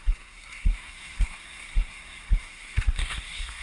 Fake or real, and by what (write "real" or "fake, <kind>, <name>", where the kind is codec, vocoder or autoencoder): fake, codec, SNAC